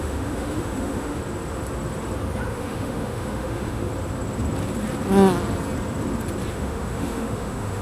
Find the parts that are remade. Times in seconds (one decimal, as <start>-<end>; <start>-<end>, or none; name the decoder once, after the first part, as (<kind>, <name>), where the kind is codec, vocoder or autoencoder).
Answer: 0.0-1.2 (autoencoder, DAC-VAE); 2.5-3.9; 6.5-7.8